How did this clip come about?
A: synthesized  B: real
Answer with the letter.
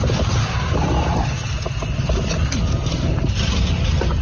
B